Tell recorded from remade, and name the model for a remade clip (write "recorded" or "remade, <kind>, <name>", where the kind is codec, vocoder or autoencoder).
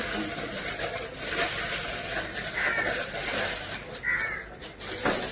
recorded